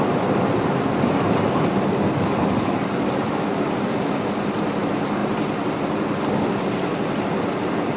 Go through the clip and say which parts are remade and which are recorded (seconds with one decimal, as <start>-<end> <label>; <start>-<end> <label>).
0.0-2.1 recorded; 2.1-3.1 remade; 3.1-8.0 recorded